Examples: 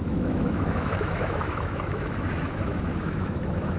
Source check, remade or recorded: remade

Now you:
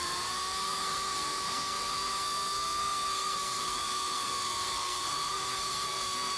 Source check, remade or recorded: remade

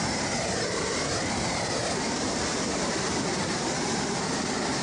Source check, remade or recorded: remade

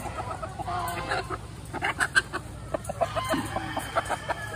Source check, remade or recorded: recorded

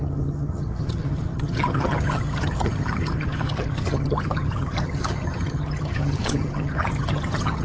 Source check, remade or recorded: remade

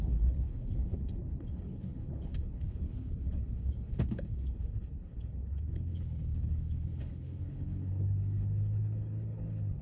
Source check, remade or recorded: remade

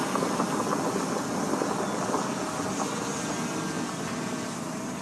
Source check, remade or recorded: recorded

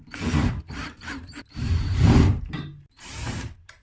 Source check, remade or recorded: remade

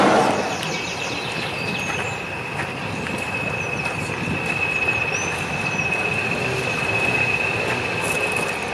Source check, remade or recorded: recorded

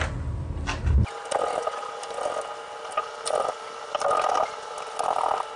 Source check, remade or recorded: recorded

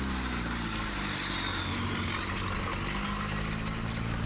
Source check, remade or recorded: recorded